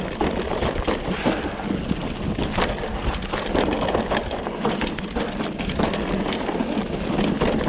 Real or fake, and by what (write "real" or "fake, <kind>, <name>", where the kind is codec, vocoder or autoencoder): real